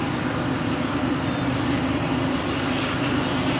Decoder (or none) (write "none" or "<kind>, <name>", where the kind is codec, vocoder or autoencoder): none